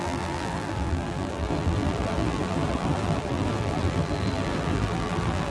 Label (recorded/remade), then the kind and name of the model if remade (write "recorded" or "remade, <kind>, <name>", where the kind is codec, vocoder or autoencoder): remade, vocoder, BigVGAN v2